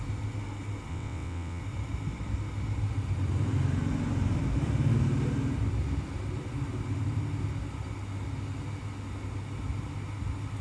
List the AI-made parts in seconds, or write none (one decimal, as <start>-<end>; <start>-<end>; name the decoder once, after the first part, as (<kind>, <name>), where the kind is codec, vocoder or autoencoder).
0.9-1.6 (vocoder, WaveNeXt)